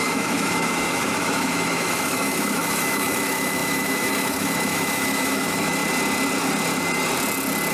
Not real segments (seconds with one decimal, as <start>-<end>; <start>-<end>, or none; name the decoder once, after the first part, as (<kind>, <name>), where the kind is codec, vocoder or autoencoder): 0.0-5.8 (autoencoder, DAC-VAE)